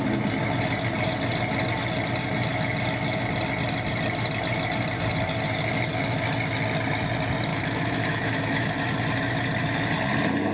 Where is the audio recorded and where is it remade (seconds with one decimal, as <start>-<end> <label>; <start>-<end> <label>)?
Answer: 0.0-7.5 recorded; 7.5-8.7 remade; 8.7-10.5 recorded